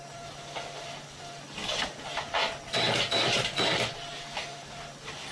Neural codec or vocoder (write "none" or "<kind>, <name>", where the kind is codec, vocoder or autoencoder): none